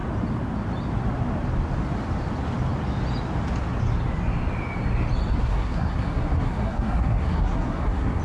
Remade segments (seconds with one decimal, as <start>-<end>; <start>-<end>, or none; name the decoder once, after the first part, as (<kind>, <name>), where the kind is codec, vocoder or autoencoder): 5.4-8.2 (codec, SNAC)